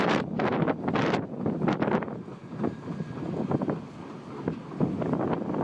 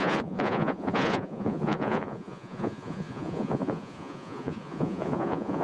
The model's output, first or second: second